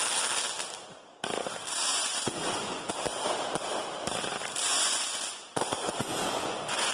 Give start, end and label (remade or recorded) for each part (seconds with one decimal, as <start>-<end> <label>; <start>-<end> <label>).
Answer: 0.0-1.9 recorded; 1.9-2.9 remade; 2.9-4.7 recorded; 4.7-6.9 remade